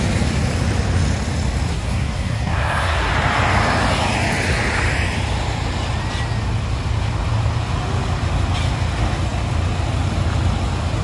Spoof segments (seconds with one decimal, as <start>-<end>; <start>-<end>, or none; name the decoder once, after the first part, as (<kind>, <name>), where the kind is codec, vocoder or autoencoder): 1.7-3.1 (codec, SNAC)